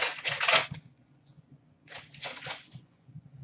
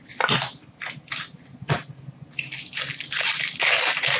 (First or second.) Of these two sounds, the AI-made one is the first